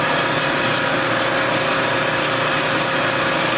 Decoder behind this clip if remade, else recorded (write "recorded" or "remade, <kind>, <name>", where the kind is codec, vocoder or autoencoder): recorded